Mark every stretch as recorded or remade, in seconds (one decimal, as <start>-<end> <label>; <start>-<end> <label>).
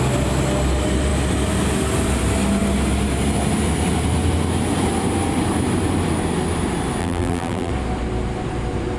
0.0-7.0 recorded; 7.0-7.7 remade; 7.7-9.0 recorded